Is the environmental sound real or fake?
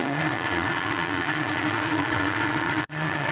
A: fake